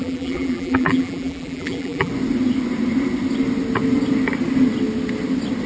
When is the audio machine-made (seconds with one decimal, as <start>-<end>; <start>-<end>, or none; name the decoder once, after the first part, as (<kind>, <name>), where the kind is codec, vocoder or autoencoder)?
0.0-2.1 (vocoder, BigVGAN v2)